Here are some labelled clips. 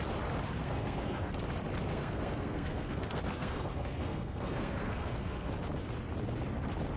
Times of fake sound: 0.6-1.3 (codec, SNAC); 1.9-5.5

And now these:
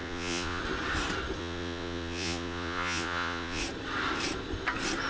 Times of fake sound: 0.0-0.6 (vocoder, Vocos); 1.4-3.6

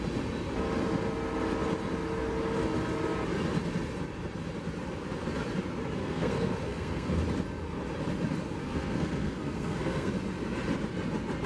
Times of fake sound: 6.0-7.2 (codec, SNAC); 8.6-10.1

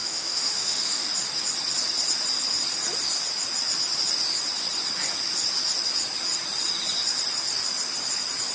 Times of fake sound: 0.0-1.1 (autoencoder, DAC-VAE)

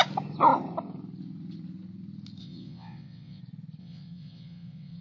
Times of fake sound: 2.4-3.4 (vocoder, WaveNeXt); 3.8-5.0